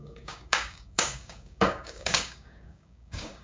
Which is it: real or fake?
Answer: fake